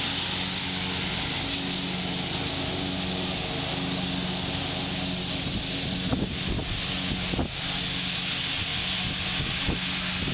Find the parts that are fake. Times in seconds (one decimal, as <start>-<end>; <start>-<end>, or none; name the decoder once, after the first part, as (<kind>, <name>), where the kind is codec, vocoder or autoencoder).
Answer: none